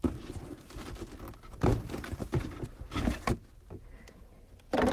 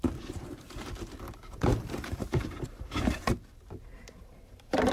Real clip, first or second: first